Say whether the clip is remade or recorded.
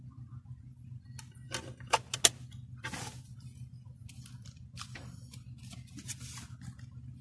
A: recorded